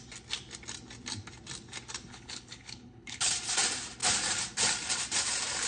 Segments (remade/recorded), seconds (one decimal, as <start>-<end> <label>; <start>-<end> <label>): 0.0-2.1 recorded; 2.1-3.3 remade; 3.3-5.7 recorded